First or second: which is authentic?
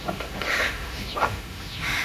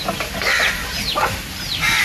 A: second